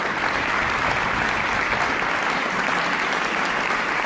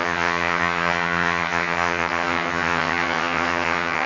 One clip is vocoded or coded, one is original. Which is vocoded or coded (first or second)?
second